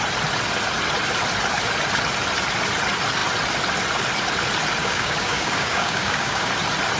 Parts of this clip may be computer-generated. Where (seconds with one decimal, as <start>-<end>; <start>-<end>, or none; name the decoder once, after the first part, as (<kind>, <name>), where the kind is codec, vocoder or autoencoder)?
4.8-6.5 (codec, DAC)